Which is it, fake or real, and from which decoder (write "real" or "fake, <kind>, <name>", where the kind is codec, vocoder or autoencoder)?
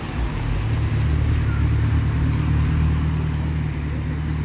real